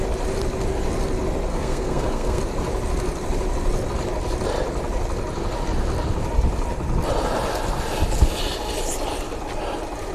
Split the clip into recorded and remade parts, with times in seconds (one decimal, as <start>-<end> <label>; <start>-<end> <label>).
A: 0.0-1.5 recorded; 1.5-2.4 remade; 2.4-10.1 recorded